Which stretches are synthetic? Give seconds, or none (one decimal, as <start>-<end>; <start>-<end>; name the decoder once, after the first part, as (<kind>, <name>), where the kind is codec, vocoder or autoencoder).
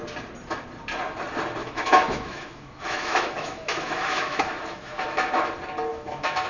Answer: 1.6-5.5 (autoencoder, DAC-VAE); 5.9-6.5